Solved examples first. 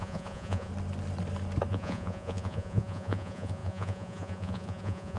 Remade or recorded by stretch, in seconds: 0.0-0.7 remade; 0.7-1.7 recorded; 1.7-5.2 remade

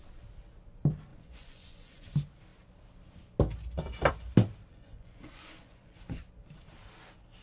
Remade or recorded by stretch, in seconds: 0.0-1.1 recorded; 1.1-2.1 remade; 2.1-4.7 recorded; 4.7-6.2 remade; 6.2-7.4 recorded